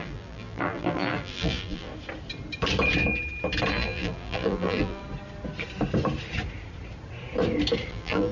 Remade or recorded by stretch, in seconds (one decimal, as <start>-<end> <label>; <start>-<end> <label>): 0.0-1.9 remade; 1.9-3.7 recorded; 3.7-5.0 remade; 5.0-7.9 recorded; 7.9-8.3 remade